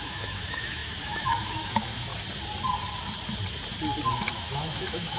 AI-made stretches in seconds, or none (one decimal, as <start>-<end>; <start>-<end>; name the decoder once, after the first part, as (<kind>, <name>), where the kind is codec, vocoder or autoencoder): 0.0-2.1 (autoencoder, DAC-VAE); 4.2-5.2